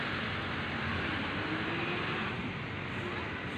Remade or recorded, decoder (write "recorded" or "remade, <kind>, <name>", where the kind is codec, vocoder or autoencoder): recorded